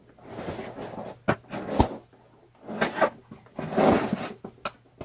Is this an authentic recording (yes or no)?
yes